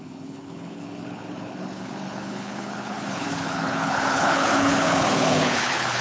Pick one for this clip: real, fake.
fake